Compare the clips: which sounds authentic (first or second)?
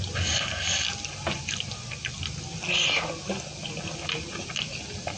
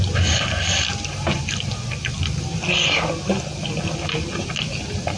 first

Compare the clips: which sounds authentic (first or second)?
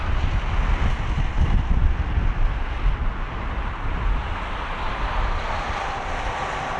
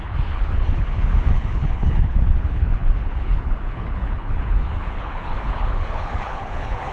first